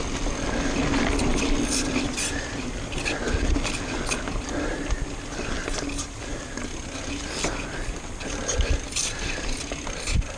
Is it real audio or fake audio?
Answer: real